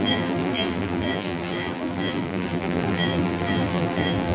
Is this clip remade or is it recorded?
remade